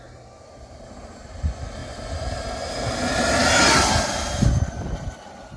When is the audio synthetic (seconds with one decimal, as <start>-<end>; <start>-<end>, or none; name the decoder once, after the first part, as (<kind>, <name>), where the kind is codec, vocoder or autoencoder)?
none